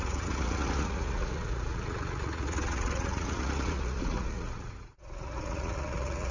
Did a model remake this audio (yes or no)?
yes